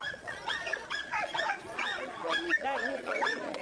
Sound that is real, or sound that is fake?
fake